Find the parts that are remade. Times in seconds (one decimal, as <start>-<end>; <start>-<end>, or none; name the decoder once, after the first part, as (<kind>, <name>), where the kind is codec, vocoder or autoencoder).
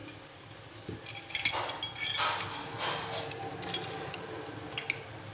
none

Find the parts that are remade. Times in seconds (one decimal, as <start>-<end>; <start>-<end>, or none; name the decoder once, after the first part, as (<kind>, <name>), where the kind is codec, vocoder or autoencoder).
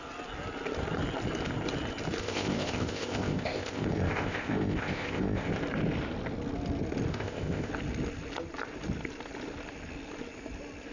2.2-5.5 (codec, ZipCodec); 7.1-7.7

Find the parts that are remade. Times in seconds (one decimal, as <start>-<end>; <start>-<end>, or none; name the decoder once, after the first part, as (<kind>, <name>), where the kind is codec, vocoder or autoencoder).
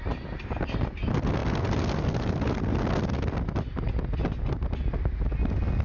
none